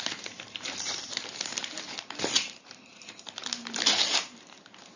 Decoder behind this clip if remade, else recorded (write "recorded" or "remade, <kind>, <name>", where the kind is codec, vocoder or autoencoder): remade, vocoder, BigVGAN v2